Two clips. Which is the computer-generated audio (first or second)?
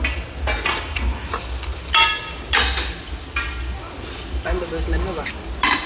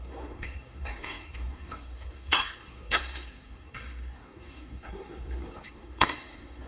second